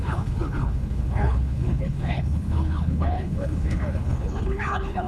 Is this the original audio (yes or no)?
no